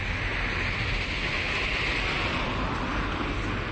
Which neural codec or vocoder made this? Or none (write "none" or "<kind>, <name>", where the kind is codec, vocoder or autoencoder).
none